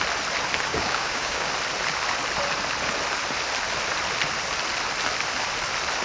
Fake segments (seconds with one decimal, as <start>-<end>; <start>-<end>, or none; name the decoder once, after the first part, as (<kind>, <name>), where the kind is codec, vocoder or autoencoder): 0.7-1.5 (codec, DAC)